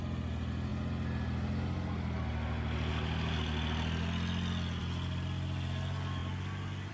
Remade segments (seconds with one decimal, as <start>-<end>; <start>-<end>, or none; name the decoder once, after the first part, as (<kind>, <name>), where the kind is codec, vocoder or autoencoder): none